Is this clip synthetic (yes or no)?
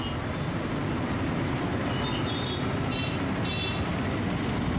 no